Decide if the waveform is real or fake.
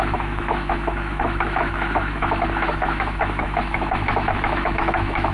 fake